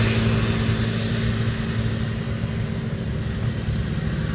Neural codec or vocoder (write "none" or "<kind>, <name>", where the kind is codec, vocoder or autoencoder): none